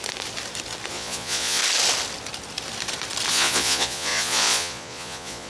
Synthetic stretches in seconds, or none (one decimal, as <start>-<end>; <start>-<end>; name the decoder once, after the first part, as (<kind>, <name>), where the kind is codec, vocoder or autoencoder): 0.9-1.6 (vocoder, Vocos); 3.3-5.5

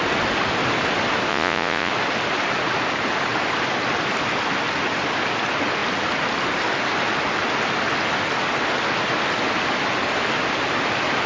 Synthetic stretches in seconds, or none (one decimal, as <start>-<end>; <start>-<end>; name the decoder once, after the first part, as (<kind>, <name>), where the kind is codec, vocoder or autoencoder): 1.3-1.9 (vocoder, Vocos)

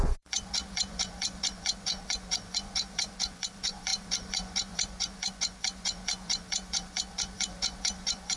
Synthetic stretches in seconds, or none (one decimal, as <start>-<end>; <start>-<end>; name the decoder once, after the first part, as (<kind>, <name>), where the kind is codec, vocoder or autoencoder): 0.0-8.4 (vocoder, Vocos)

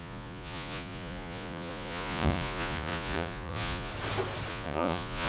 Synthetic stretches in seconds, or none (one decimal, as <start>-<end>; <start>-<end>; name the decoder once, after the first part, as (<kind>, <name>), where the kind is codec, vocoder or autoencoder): 0.0-3.9 (vocoder, Vocos); 4.5-5.3

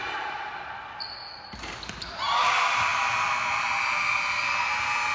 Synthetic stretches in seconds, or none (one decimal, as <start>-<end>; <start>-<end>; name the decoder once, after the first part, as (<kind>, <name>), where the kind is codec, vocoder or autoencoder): none

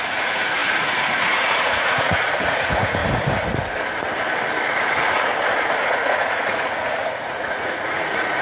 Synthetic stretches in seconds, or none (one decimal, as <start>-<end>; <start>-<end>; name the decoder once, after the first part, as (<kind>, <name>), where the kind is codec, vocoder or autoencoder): 0.0-3.0 (vocoder, Vocos); 4.8-5.3; 5.8-8.4